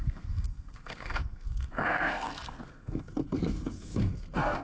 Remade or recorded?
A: remade